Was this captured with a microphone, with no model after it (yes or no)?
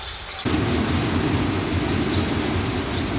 yes